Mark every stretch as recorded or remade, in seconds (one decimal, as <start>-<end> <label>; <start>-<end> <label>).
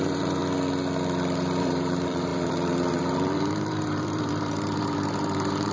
0.0-0.4 remade; 0.4-1.6 recorded; 1.6-5.7 remade